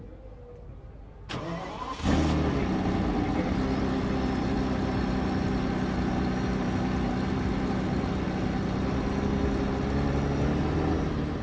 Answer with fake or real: real